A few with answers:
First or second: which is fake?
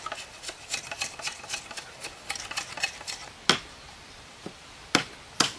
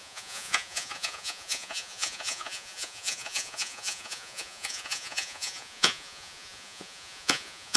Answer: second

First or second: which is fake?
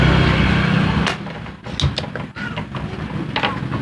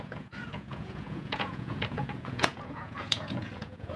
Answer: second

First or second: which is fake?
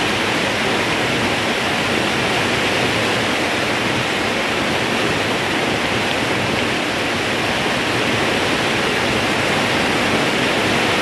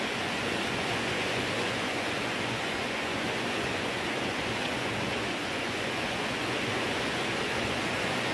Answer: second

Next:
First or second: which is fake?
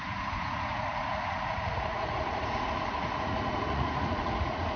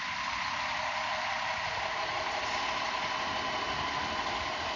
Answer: first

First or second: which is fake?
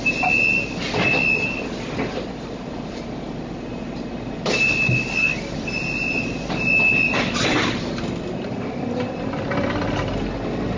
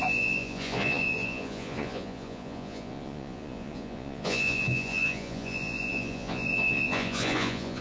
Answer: second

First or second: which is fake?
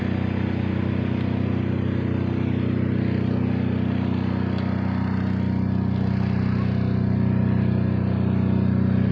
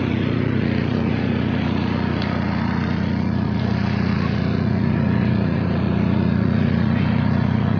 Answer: second